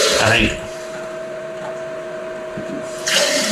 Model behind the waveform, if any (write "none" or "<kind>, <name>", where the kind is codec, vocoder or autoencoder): vocoder, BigVGAN v2